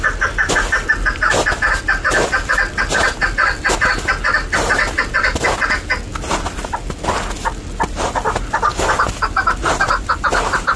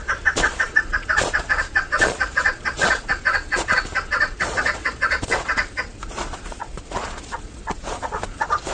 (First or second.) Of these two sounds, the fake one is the second